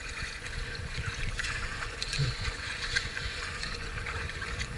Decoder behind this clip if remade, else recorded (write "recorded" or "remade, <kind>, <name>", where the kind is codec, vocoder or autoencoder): remade, vocoder, Vocos